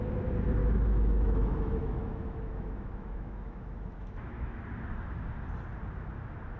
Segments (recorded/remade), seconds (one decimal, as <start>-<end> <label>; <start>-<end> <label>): 0.0-0.6 recorded; 0.6-4.6 remade; 4.6-6.6 recorded

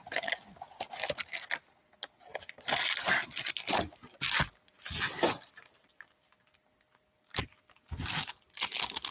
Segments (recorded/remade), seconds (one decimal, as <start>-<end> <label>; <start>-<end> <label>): 0.0-9.1 recorded

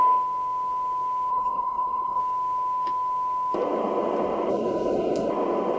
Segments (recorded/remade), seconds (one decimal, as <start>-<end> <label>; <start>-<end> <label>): 0.0-1.3 recorded; 1.3-2.2 remade; 2.2-4.5 recorded; 4.5-5.3 remade; 5.3-5.8 recorded

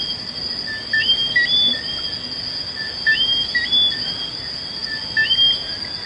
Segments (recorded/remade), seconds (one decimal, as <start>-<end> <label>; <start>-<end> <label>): 0.0-6.1 recorded

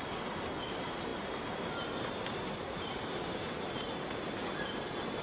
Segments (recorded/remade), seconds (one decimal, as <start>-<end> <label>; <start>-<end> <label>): 0.0-5.2 recorded

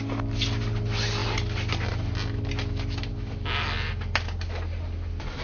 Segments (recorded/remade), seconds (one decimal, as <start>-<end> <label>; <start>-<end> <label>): 0.0-5.4 recorded